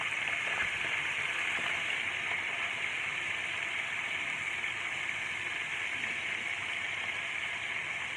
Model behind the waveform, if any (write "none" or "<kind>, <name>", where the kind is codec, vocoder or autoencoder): vocoder, BigVGAN v2